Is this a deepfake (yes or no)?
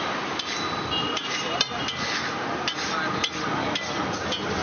no